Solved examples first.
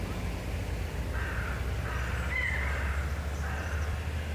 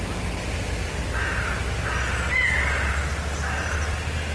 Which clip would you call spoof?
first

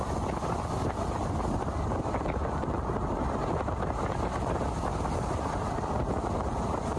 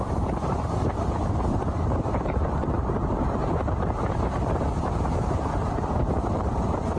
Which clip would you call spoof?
second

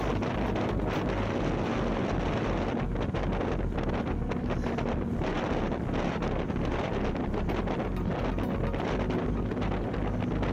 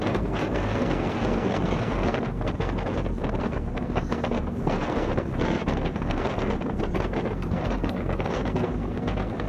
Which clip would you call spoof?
second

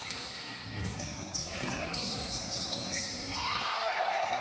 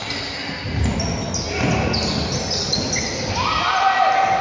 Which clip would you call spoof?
first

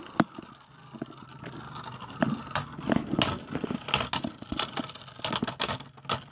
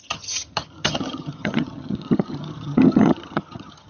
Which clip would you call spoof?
second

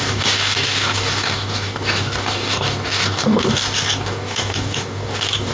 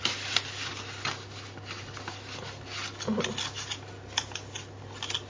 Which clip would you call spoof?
first